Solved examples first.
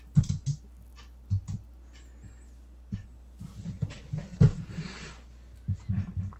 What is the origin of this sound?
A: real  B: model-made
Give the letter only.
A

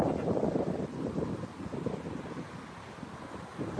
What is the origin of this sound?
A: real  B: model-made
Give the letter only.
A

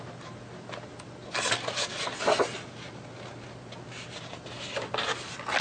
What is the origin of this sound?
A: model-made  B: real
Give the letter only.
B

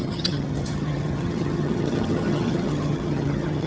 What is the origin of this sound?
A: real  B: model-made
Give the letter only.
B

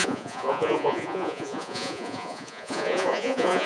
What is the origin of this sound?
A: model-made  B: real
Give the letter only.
A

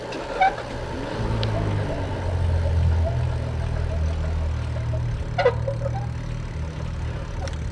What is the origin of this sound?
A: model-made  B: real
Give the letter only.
B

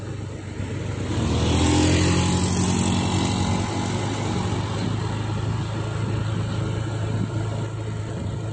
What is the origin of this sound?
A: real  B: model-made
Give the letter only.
A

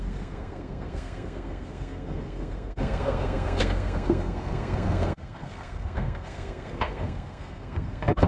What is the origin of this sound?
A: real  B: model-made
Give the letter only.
B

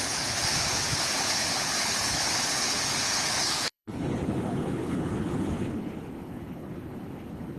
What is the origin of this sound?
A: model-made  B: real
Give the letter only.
A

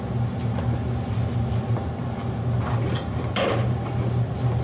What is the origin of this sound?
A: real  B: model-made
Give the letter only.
A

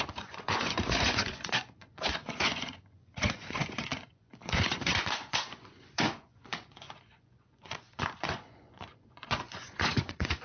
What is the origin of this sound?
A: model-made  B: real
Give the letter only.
A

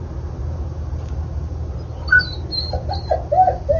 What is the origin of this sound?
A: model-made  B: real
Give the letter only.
B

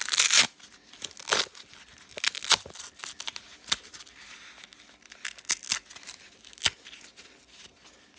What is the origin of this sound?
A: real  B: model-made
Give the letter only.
A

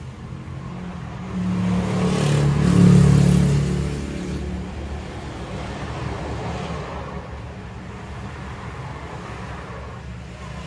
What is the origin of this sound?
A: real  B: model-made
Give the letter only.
A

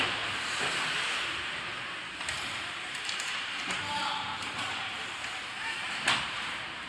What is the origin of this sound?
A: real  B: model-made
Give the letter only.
B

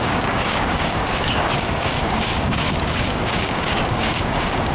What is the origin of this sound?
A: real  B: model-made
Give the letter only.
B